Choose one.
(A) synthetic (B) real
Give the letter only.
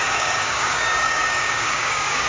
A